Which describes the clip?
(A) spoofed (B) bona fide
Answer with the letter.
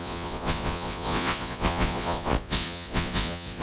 A